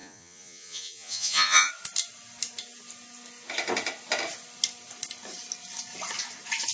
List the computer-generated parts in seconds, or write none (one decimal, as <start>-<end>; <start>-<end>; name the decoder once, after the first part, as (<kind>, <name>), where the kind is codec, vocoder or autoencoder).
0.0-1.7 (vocoder, Vocos)